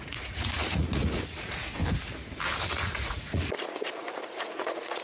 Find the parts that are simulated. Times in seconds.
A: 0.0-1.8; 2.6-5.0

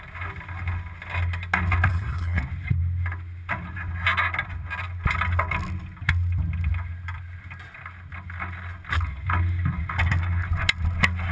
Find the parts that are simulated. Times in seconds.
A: 1.9-2.4

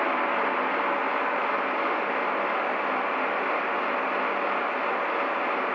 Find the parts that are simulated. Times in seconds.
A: none

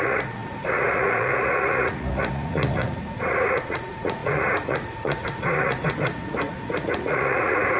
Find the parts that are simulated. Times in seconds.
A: 0.0-7.8

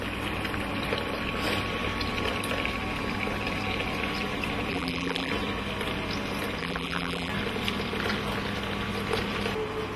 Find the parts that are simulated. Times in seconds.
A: 4.7-5.3; 6.6-7.3

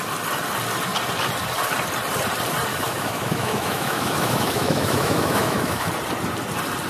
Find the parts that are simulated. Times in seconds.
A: 2.7-5.9